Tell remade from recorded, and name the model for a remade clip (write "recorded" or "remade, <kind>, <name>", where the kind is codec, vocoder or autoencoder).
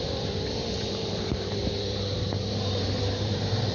remade, vocoder, BigVGAN v2